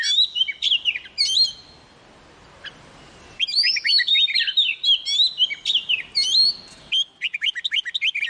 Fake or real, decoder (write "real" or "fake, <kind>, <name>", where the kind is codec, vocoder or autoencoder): real